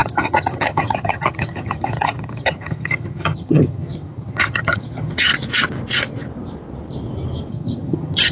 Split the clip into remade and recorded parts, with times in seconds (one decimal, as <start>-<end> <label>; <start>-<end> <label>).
0.0-5.3 remade; 5.3-7.5 recorded; 7.5-8.3 remade